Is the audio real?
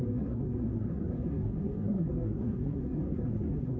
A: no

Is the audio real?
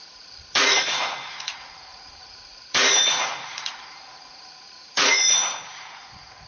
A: no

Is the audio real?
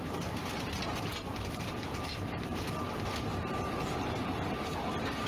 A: no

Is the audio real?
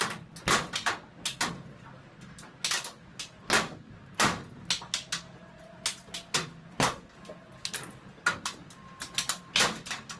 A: yes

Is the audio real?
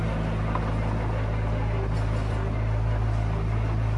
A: yes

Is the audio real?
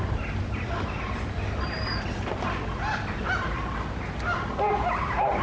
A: yes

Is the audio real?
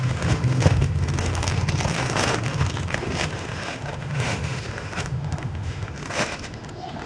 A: no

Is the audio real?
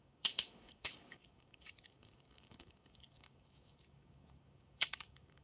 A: no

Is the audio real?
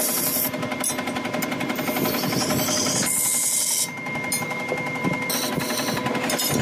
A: yes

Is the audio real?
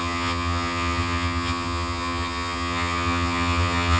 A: no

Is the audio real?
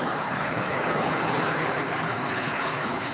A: no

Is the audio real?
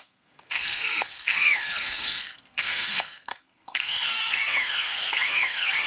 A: no